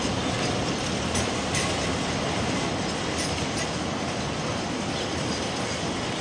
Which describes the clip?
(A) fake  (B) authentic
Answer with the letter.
B